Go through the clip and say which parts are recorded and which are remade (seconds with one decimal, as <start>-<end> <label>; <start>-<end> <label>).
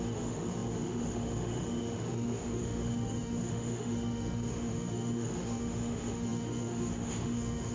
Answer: 0.0-7.7 remade